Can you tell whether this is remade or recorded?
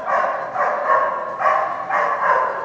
recorded